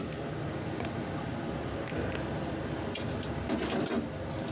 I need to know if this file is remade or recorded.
recorded